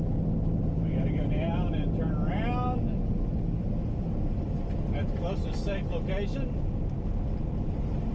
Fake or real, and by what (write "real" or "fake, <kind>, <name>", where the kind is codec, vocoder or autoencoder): real